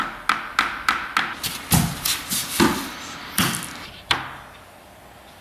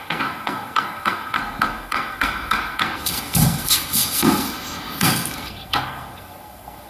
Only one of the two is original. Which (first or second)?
first